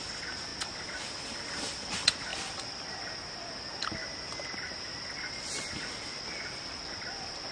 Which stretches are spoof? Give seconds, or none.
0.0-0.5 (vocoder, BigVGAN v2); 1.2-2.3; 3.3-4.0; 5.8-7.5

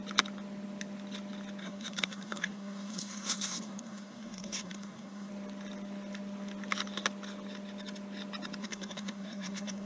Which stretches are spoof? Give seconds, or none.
1.6-5.3 (codec, SNAC); 8.6-9.9

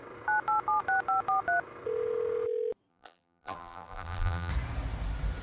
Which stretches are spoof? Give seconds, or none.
2.9-4.5 (vocoder, BigVGAN v2)

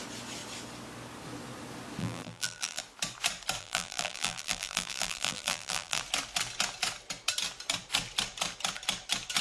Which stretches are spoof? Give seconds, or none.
2.0-2.8 (vocoder, BigVGAN v2); 3.6-6.0

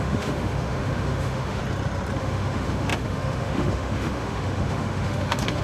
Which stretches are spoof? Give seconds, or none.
0.0-1.6 (autoencoder, DAC-VAE); 2.2-5.6